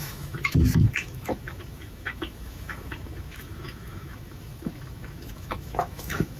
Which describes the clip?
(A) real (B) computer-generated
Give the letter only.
B